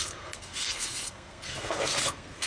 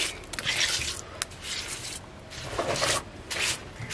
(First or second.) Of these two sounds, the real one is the second